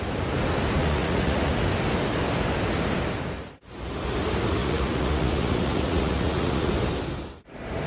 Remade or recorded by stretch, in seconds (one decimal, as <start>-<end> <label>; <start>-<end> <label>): 0.0-0.8 recorded; 0.8-1.5 remade; 1.5-4.6 recorded; 4.6-6.7 remade; 6.7-7.9 recorded